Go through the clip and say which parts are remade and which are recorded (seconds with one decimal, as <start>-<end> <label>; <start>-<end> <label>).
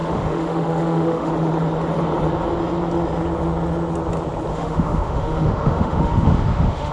0.0-1.3 remade; 1.3-4.5 recorded; 4.5-6.9 remade